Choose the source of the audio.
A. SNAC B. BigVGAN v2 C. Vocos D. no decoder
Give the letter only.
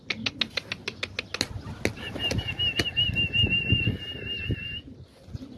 D